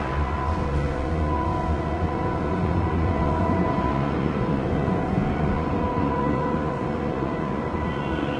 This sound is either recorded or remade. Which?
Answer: remade